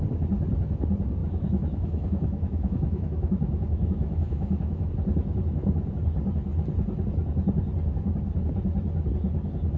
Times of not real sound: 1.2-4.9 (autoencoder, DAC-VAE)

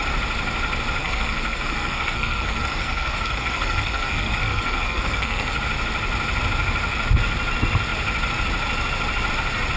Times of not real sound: 1.0-5.6 (codec, SNAC)

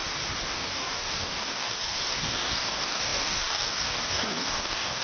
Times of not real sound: 0.5-5.0 (codec, DAC)

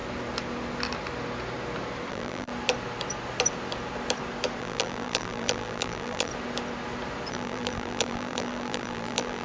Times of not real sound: 2.1-2.5 (vocoder, BigVGAN v2); 4.6-6.3; 7.3-9.4

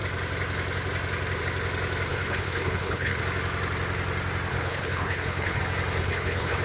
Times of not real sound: 2.1-3.2 (codec, HILCodec); 4.5-5.6; 6.0-6.6

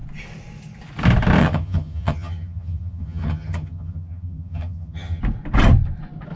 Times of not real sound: 1.4-5.2 (vocoder, HiFi-GAN)

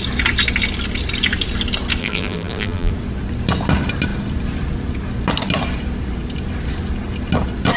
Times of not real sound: 2.0-2.9 (vocoder, BigVGAN v2)